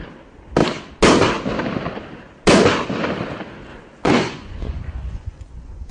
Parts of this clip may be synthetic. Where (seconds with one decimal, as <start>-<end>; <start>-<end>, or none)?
3.7-5.9